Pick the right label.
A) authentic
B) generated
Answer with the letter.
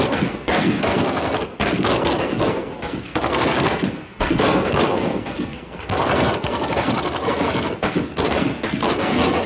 B